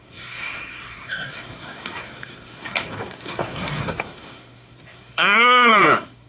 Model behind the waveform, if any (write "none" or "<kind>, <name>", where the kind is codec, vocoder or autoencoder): codec, SNAC